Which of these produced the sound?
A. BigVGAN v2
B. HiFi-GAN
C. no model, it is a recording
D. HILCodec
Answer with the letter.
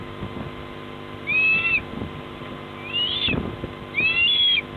C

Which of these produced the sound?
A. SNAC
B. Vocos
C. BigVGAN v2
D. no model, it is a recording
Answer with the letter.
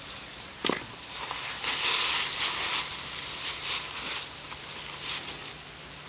D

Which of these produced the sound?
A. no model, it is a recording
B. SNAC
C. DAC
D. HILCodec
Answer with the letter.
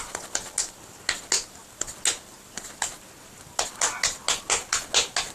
A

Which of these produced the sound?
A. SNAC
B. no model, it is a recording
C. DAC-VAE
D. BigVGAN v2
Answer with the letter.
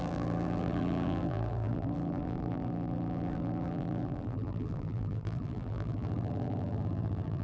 D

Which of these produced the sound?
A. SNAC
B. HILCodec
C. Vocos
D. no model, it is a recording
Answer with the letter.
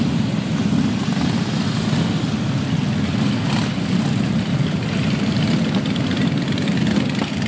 D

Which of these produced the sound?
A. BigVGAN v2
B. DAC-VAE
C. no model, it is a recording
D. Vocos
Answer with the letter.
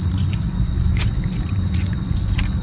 D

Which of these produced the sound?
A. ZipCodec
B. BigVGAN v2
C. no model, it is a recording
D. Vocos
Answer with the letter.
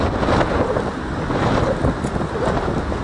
C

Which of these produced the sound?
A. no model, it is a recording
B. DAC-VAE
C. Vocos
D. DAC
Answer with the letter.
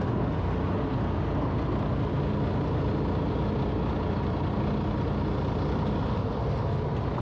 A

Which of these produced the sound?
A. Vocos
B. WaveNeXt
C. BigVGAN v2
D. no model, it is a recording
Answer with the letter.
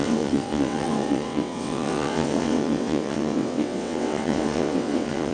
B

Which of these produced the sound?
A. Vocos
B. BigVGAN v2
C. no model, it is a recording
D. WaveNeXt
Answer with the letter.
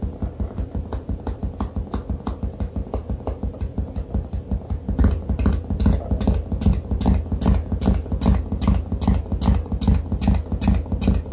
C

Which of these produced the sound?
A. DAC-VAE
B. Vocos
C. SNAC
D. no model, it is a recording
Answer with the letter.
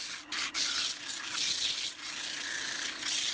D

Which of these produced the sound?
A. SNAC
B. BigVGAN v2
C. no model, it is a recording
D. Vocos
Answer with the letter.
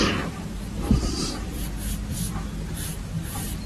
C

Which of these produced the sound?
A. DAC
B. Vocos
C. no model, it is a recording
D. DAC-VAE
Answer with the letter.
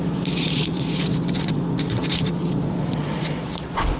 B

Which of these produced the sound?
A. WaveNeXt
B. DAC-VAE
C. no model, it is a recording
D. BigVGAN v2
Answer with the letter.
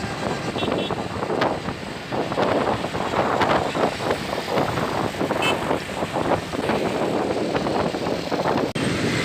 C